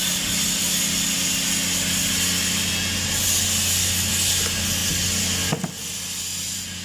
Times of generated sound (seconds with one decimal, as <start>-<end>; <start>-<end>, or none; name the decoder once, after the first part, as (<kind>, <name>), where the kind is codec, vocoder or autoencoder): none